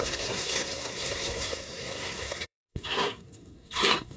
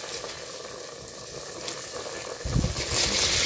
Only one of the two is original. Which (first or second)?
second